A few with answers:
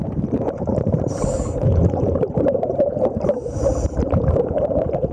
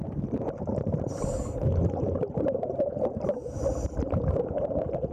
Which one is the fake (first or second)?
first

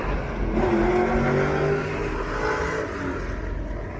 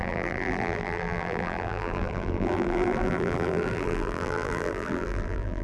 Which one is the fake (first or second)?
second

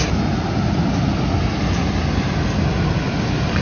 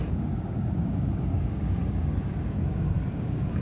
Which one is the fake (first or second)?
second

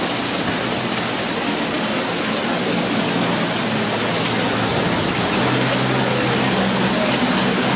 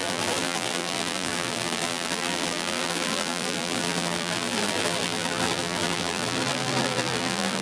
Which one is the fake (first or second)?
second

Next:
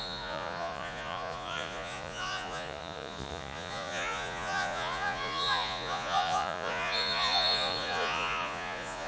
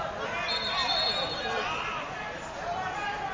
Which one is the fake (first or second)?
first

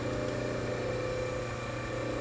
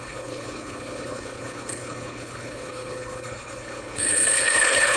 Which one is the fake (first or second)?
second